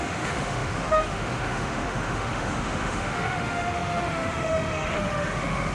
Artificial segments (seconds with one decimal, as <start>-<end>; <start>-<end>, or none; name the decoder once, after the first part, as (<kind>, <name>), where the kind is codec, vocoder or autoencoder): 0.0-5.7 (autoencoder, DAC-VAE)